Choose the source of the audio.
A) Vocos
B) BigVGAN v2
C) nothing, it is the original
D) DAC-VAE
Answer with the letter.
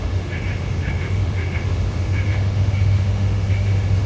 D